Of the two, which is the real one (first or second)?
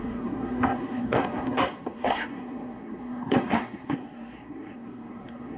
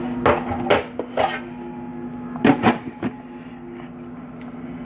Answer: second